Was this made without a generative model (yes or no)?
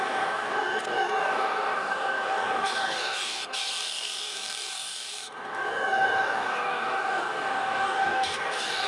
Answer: no